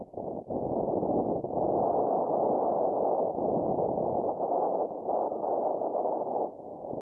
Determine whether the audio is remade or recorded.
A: recorded